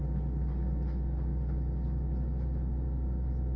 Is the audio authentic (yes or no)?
yes